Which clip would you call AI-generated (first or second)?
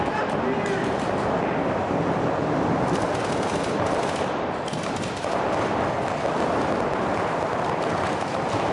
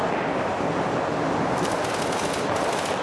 first